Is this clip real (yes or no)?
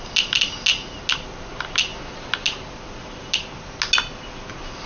yes